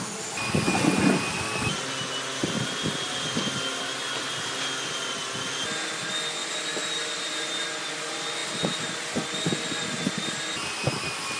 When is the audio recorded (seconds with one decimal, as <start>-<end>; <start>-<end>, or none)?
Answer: 0.0-11.4